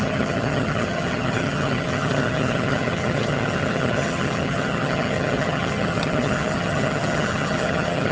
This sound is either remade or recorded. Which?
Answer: remade